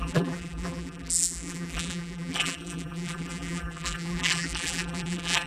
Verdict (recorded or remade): remade